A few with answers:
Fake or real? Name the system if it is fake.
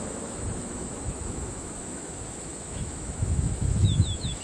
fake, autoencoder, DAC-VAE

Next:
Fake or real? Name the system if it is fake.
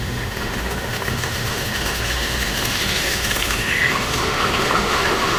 fake, autoencoder, DAC-VAE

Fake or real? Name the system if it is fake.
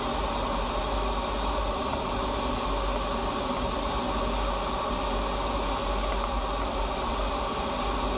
real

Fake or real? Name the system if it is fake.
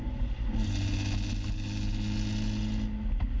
real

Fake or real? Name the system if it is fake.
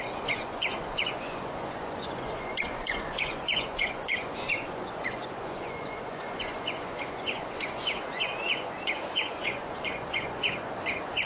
fake, vocoder, Vocos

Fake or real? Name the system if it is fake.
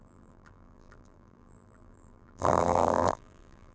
fake, vocoder, BigVGAN v2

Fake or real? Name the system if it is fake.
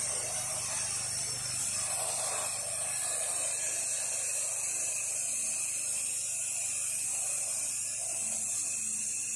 fake, vocoder, BigVGAN v2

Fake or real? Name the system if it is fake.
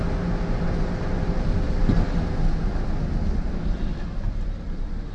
real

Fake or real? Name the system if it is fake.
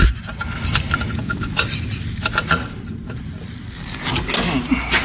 real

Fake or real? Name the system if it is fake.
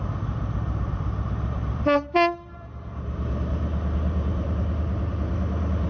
fake, vocoder, BigVGAN v2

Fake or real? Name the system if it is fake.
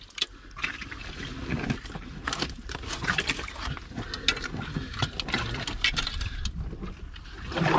real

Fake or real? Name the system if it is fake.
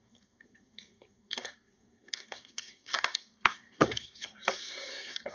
fake, codec, SNAC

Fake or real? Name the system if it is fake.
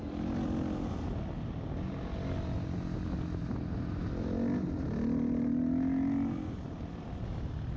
real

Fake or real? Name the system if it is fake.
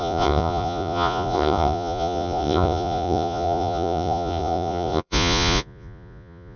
fake, vocoder, Vocos